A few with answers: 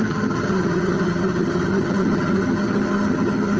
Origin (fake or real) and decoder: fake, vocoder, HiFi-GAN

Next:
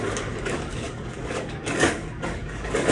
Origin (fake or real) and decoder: fake, codec, DAC